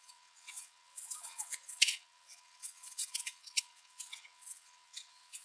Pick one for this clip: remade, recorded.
remade